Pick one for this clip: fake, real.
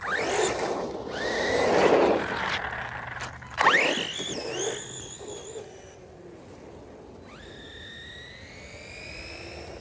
real